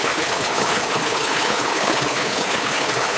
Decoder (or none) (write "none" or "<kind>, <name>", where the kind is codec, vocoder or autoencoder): codec, HILCodec